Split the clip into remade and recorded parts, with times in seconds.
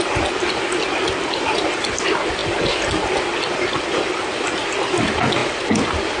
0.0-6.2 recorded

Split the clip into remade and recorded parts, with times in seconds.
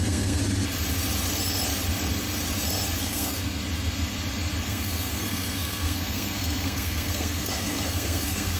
0.0-0.4 remade; 0.4-3.0 recorded; 3.0-3.6 remade; 3.6-4.6 recorded; 4.6-8.6 remade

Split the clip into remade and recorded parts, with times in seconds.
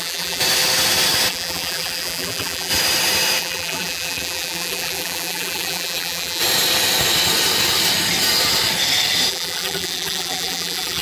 0.0-0.4 remade; 0.4-1.3 recorded; 1.3-2.7 remade; 2.7-3.4 recorded; 3.4-6.4 remade; 6.4-9.3 recorded; 9.3-11.0 remade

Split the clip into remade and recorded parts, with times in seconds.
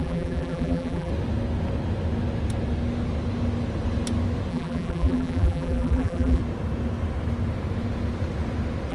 0.0-1.1 remade; 1.1-4.5 recorded; 4.5-6.4 remade; 6.4-8.9 recorded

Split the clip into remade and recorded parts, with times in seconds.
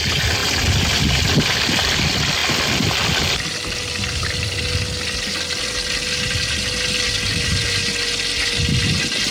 0.0-9.3 recorded